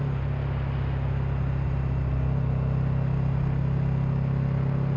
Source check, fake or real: real